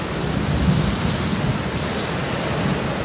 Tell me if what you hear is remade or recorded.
recorded